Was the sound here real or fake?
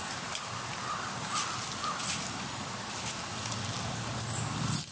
real